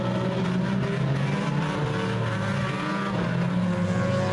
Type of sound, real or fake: real